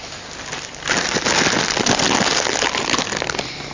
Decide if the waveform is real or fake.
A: real